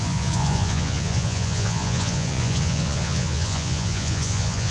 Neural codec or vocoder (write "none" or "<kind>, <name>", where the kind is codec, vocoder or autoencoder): vocoder, Vocos